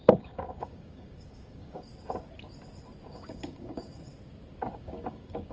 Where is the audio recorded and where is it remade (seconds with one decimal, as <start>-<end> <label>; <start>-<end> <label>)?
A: 0.0-1.9 remade; 1.9-3.1 recorded; 3.1-4.1 remade; 4.1-4.8 recorded; 4.8-5.5 remade